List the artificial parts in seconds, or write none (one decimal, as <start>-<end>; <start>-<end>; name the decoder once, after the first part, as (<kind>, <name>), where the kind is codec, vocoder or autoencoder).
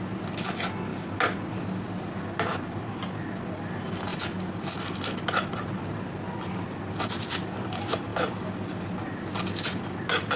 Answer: none